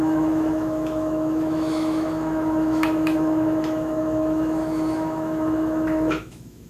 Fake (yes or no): yes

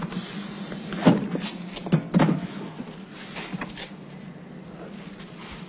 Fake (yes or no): no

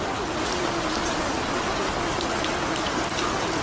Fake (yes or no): no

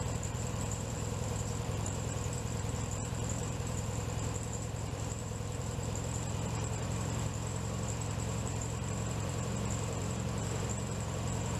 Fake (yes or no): yes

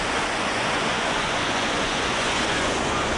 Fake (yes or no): yes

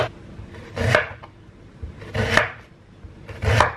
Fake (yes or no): no